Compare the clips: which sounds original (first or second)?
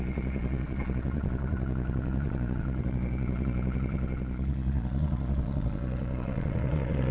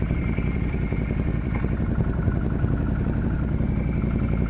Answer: second